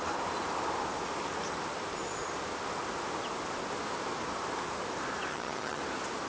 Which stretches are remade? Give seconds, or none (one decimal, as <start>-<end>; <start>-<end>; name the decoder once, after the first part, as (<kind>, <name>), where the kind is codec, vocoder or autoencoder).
5.3-5.8 (vocoder, HiFi-GAN)